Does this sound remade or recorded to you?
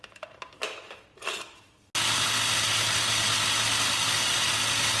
recorded